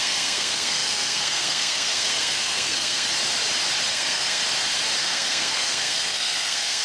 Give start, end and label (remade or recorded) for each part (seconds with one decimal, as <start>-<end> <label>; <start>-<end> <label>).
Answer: 0.0-3.1 remade; 3.1-3.9 recorded; 3.9-4.4 remade; 4.4-5.0 recorded; 5.0-6.8 remade